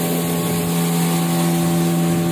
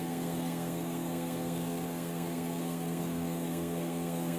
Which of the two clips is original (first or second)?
first